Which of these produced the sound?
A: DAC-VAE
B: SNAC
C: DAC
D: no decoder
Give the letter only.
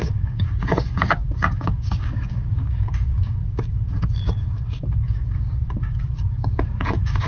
C